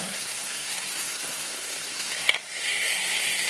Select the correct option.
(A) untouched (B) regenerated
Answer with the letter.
B